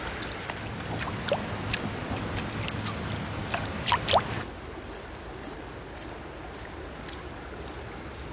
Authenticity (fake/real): real